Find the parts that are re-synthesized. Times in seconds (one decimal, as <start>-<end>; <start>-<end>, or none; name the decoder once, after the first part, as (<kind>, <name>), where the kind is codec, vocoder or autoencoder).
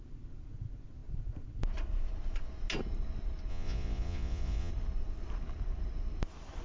3.5-4.7 (vocoder, Vocos)